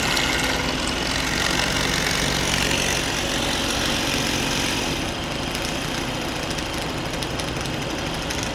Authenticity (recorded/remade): recorded